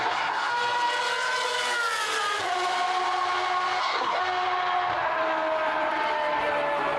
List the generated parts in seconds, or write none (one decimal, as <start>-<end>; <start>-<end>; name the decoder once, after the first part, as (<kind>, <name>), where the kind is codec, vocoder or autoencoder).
0.0-0.5 (codec, SNAC); 3.8-4.2